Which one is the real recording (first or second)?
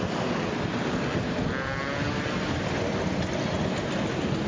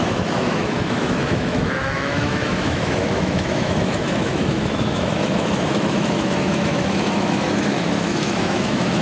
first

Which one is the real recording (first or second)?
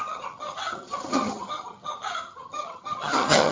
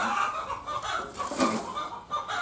second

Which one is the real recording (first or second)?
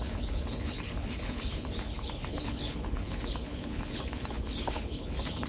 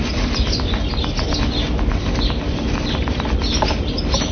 second